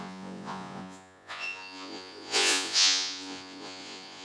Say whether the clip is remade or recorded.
remade